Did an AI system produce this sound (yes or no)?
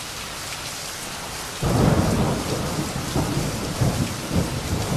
no